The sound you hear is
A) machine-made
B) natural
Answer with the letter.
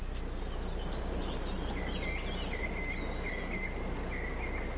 B